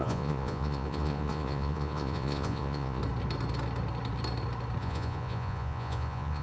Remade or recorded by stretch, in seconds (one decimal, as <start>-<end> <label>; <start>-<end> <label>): 0.0-3.0 remade; 3.0-4.8 recorded; 4.8-6.4 remade